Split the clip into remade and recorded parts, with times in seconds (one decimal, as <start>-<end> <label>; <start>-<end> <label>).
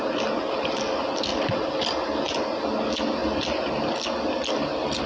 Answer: 0.0-5.1 recorded